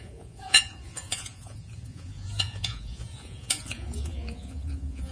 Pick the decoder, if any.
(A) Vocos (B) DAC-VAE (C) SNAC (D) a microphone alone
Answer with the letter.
A